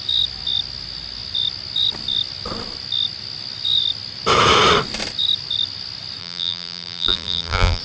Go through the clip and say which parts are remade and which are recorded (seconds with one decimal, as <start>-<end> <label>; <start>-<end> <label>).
0.0-6.2 recorded; 6.2-7.8 remade